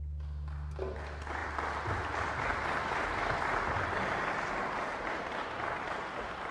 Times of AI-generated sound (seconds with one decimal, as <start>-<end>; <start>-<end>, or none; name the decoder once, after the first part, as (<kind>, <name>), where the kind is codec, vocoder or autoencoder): none